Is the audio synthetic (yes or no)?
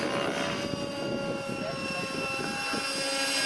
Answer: no